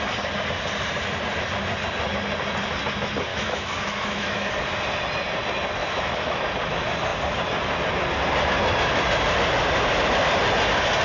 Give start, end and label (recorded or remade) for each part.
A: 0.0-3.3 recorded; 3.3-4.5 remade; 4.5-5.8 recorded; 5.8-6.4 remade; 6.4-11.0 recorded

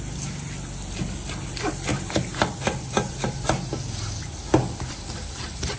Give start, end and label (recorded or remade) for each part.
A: 0.0-5.8 recorded

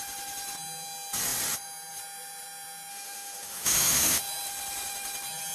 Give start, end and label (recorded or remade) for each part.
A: 0.0-2.9 recorded; 2.9-4.2 remade; 4.2-5.5 recorded

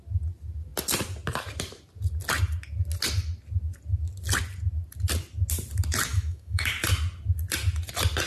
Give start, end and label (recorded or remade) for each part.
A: 0.0-6.1 recorded; 6.1-6.7 remade; 6.7-8.3 recorded

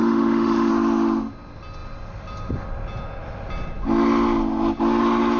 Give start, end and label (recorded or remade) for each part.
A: 0.0-0.7 remade; 0.7-5.4 recorded

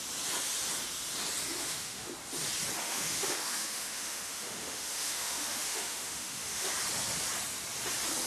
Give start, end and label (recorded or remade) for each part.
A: 0.0-1.6 recorded; 1.6-2.1 remade; 2.1-2.8 recorded; 2.8-6.7 remade; 6.7-8.3 recorded